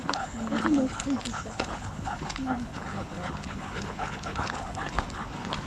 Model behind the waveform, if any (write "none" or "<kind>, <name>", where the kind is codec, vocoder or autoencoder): codec, HILCodec